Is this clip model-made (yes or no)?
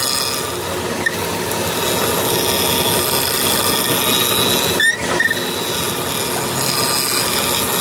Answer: no